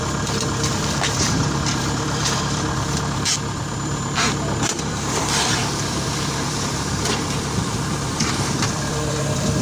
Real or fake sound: fake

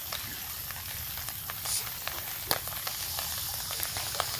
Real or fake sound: real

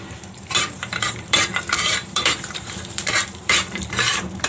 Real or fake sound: fake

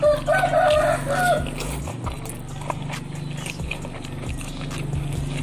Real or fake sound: real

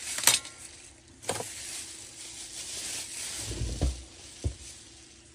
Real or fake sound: real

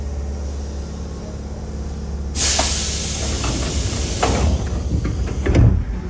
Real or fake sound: real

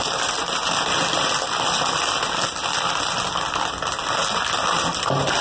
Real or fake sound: real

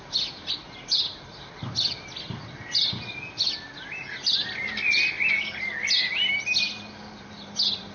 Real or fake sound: real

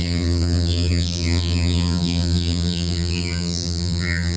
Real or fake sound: fake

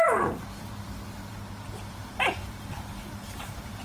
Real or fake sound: fake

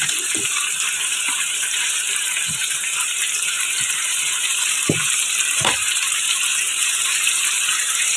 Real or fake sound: fake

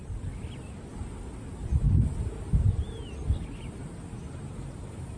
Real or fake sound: real